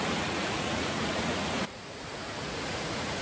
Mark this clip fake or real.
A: fake